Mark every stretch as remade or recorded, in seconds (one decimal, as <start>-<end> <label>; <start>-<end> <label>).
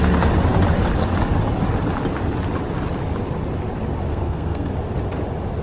0.0-4.1 recorded; 4.1-4.7 remade; 4.7-5.6 recorded